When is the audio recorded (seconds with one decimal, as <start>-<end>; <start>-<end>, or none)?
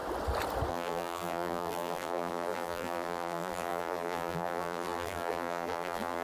0.0-0.7